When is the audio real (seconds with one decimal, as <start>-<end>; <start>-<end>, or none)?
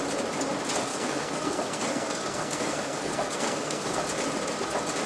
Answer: 0.0-0.9; 4.0-5.1